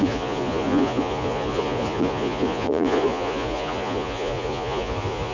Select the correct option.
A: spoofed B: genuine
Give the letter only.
A